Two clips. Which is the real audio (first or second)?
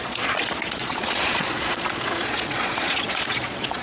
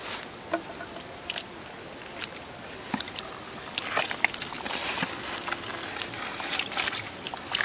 second